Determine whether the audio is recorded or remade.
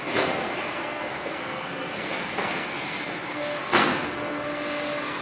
remade